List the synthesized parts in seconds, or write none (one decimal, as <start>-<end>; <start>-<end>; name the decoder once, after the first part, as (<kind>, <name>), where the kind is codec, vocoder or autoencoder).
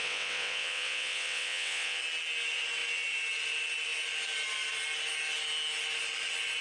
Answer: 0.0-2.0 (vocoder, WaveNeXt)